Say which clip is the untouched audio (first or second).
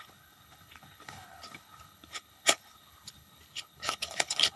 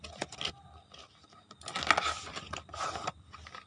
second